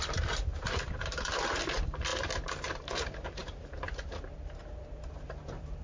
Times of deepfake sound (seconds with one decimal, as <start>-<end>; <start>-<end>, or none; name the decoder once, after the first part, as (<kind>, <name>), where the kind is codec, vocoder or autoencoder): 0.0-5.8 (vocoder, BigVGAN v2)